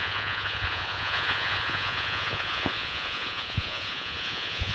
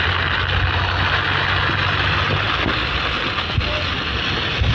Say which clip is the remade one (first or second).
first